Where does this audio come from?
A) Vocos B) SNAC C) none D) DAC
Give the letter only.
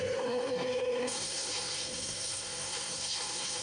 B